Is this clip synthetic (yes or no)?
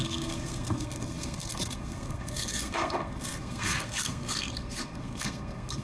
yes